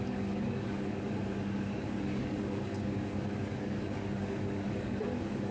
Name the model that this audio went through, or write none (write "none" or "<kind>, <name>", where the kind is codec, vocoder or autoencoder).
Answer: codec, DAC